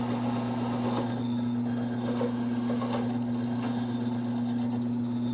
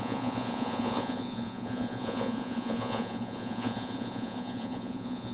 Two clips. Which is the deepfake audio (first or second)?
second